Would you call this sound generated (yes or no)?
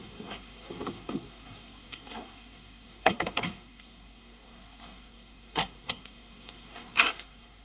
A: yes